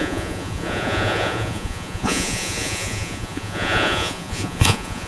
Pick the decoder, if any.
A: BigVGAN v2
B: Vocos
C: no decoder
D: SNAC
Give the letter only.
B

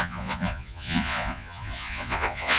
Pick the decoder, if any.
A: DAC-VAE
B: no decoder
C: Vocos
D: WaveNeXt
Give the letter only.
C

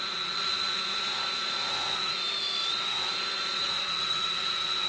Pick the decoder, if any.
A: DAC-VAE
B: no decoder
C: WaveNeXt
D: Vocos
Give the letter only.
D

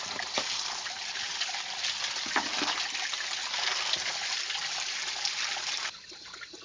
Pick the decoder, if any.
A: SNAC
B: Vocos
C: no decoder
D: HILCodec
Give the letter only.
C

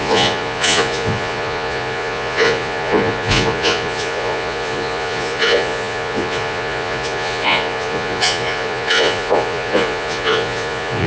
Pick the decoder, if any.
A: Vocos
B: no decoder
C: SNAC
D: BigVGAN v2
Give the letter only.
A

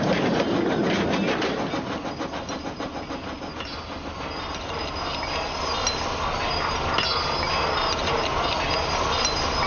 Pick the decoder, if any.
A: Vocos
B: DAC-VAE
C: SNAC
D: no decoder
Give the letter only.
D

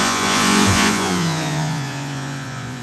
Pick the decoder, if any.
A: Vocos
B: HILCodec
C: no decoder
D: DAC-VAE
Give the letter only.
A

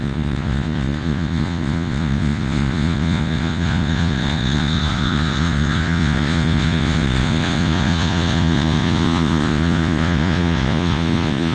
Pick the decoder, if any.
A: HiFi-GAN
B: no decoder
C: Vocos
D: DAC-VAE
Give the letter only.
C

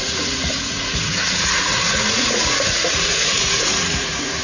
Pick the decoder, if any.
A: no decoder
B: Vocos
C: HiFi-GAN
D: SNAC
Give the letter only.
B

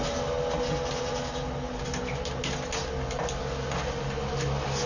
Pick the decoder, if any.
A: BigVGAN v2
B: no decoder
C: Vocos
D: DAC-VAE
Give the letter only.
B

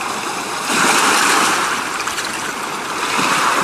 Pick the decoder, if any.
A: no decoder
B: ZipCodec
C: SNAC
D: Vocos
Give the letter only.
A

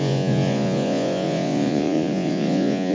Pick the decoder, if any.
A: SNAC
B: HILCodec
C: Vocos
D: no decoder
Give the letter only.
C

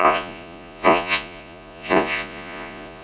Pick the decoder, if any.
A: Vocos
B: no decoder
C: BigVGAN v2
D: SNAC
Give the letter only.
A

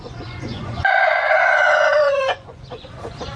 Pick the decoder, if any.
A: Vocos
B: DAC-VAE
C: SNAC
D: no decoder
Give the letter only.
A